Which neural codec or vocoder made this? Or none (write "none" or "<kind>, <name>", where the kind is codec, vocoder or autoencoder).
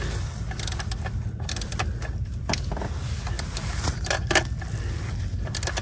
none